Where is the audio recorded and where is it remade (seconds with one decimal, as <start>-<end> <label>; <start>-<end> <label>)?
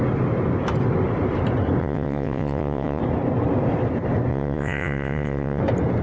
0.0-1.8 recorded; 1.8-3.0 remade; 3.0-4.3 recorded; 4.3-5.6 remade; 5.6-6.0 recorded